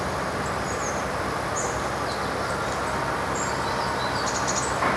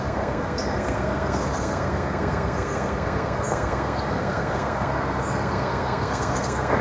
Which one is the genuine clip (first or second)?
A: first